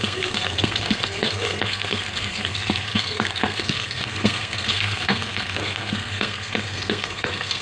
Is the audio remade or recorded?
remade